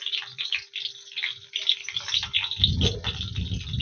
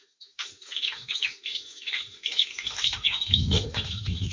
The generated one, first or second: second